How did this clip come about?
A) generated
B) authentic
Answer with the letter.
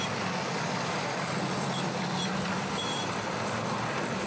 B